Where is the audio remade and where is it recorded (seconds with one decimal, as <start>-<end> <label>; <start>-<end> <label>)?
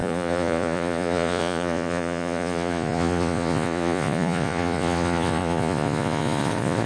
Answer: 0.0-6.9 remade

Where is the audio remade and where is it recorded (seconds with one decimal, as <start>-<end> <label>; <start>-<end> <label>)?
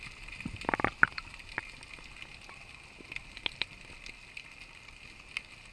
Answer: 0.0-5.7 recorded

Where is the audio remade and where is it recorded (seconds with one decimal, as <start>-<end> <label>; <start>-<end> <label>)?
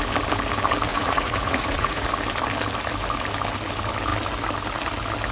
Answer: 0.0-0.9 recorded; 0.9-2.1 remade; 2.1-5.3 recorded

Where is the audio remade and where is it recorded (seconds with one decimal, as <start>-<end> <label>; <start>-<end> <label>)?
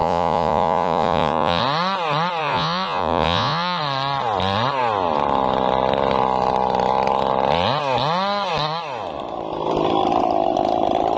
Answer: 0.0-1.6 remade; 1.6-2.4 recorded; 2.4-3.8 remade; 3.8-11.2 recorded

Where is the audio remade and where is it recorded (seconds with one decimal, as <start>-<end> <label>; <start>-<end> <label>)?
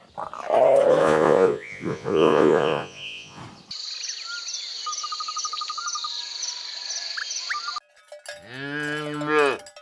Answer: 0.0-1.0 recorded; 1.0-3.4 remade; 3.4-9.8 recorded